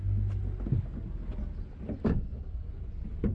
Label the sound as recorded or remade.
recorded